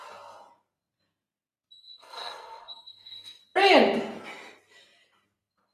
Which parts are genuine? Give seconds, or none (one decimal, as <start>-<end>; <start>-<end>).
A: 0.0-1.8; 3.4-5.7